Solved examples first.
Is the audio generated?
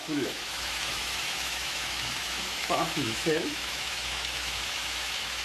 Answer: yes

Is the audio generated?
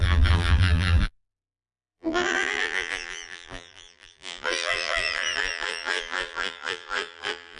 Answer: yes